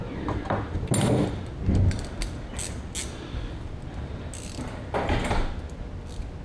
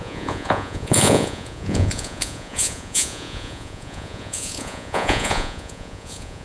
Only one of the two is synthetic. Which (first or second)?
second